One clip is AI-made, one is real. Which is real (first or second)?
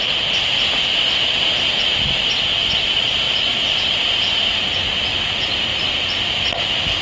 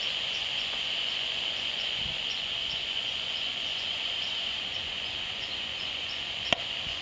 first